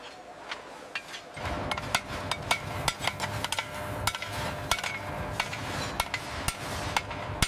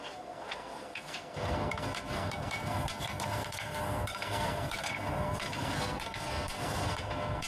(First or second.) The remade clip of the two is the second